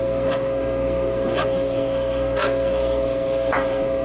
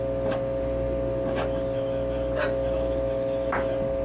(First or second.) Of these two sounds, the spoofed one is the first